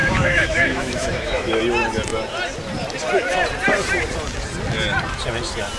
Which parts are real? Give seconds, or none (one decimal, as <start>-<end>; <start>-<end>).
1.6-5.8